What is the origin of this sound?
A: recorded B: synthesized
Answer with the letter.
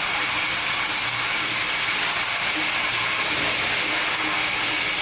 A